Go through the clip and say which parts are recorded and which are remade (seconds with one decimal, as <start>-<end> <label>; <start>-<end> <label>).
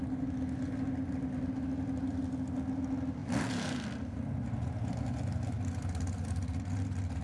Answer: 0.0-7.2 recorded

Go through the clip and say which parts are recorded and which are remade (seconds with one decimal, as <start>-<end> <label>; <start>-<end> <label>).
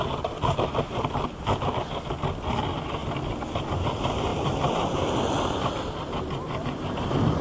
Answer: 0.0-7.4 recorded